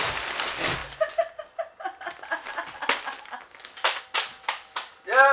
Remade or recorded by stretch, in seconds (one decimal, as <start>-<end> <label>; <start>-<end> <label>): 0.0-5.3 recorded